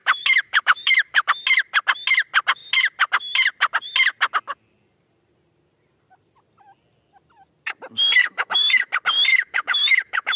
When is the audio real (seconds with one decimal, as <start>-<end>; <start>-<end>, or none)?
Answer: 1.3-8.2; 8.9-9.3